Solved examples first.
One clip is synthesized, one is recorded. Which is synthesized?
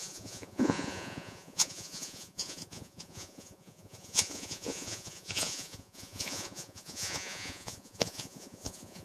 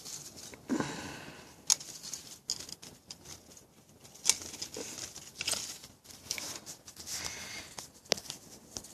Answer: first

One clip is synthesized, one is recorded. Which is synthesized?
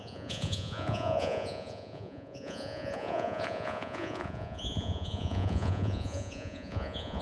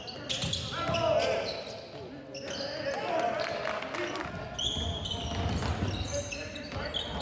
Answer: first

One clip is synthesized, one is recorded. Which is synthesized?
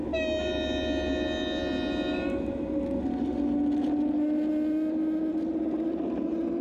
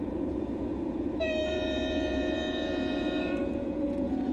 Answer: second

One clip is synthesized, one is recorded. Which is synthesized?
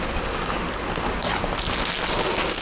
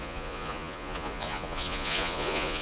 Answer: second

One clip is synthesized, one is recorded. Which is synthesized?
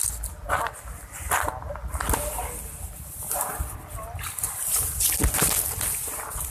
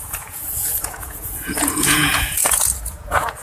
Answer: second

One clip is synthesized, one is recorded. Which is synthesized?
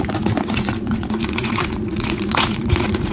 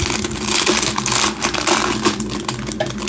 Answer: first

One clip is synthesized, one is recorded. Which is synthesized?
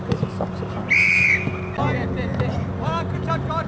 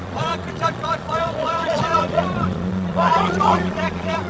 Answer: second